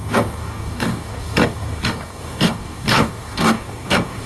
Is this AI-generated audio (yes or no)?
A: yes